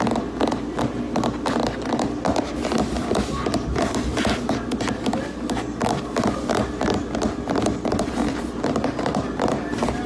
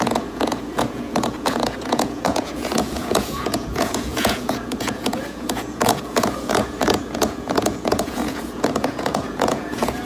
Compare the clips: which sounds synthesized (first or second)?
second